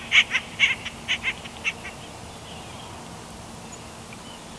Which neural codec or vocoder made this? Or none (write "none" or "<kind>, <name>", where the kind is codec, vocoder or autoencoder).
none